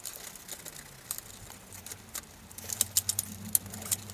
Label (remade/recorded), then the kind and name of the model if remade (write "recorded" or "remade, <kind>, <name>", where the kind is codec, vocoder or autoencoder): recorded